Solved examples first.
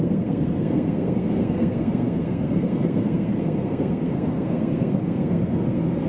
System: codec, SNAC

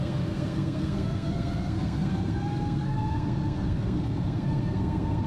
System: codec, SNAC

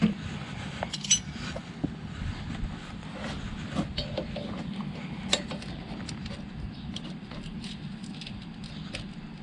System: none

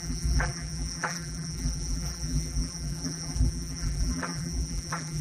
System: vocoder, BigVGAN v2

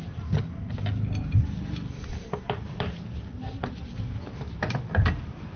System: none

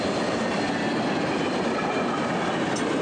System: none